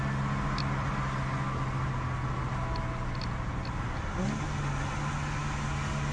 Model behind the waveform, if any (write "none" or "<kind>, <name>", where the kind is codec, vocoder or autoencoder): none